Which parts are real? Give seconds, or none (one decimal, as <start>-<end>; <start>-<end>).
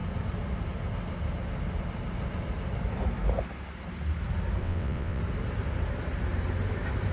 0.0-4.6; 5.2-7.1